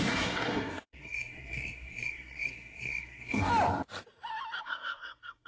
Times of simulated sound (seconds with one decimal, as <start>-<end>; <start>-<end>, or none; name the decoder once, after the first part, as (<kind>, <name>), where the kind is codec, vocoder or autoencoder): 0.0-3.5 (codec, SNAC); 4.6-5.5

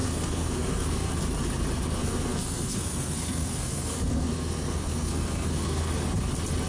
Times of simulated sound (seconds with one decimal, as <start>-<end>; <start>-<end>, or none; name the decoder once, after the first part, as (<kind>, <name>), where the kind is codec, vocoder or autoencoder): 0.0-1.1 (codec, SNAC); 2.0-5.9

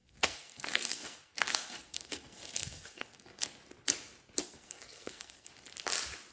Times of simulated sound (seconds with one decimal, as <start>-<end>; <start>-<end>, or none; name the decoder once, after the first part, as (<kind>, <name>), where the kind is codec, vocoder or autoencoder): 0.0-3.6 (codec, SNAC); 4.4-5.5

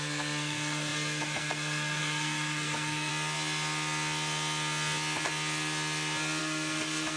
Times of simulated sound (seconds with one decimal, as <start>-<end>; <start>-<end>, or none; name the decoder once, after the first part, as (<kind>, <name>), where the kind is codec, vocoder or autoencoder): 0.0-3.1 (codec, SNAC); 6.4-7.2

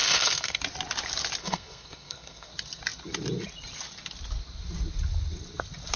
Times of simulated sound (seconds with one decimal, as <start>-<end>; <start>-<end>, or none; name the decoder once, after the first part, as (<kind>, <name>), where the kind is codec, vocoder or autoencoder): 0.0-0.6 (codec, SNAC); 1.4-2.5